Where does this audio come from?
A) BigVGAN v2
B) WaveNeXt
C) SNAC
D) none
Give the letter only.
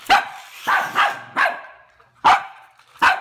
A